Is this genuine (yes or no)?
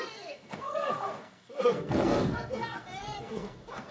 no